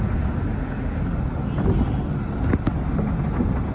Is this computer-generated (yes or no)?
no